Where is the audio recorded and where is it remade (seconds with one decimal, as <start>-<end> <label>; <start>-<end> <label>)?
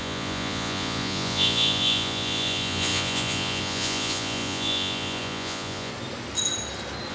0.0-5.9 remade; 5.9-7.1 recorded